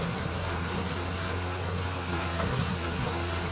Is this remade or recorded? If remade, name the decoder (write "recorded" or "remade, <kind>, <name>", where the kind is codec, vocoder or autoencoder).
remade, codec, SNAC